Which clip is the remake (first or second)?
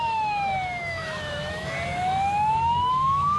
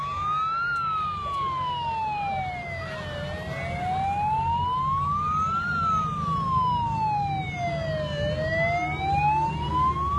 first